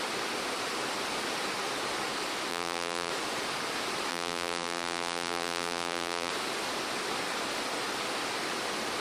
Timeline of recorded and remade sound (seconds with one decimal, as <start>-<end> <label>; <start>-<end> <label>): 0.0-2.5 recorded; 2.5-3.1 remade; 3.1-4.1 recorded; 4.1-6.3 remade; 6.3-9.0 recorded

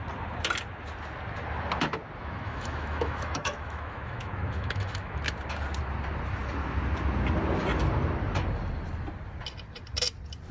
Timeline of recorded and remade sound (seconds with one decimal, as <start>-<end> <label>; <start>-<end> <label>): 0.0-2.2 recorded; 2.2-5.2 remade; 5.2-10.5 recorded

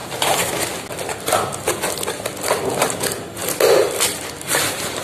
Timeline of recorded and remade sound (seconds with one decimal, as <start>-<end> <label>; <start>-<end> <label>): 0.0-5.0 recorded

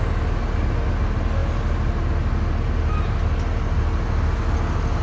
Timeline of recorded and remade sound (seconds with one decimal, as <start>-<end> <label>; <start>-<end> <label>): 0.0-5.0 recorded

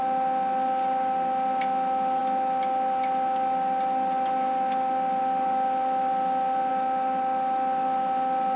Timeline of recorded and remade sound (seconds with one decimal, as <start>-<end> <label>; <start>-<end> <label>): 0.0-8.6 recorded

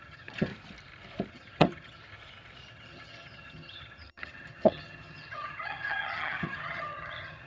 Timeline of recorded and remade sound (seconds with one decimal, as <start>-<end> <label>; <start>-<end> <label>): 0.0-0.5 remade; 0.5-1.3 recorded; 1.3-2.0 remade; 2.0-2.7 recorded; 2.7-7.5 remade